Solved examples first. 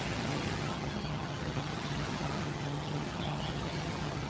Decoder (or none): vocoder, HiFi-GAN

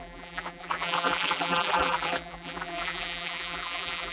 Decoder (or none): vocoder, BigVGAN v2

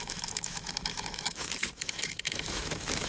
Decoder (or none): autoencoder, DAC-VAE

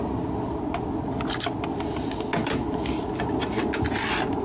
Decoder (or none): none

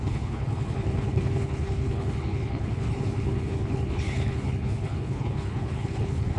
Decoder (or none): codec, HILCodec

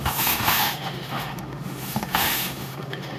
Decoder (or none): autoencoder, DAC-VAE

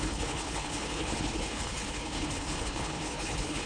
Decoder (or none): codec, HILCodec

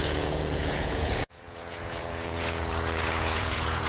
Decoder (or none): vocoder, Vocos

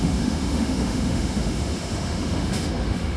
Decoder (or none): autoencoder, DAC-VAE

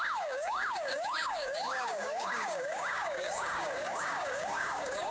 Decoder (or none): codec, DAC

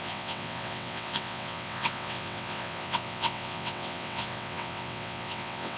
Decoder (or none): vocoder, WaveNeXt